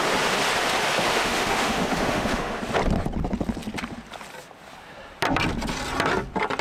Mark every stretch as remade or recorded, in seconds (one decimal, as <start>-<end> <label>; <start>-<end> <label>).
0.0-1.1 recorded; 1.1-2.6 remade; 2.6-6.6 recorded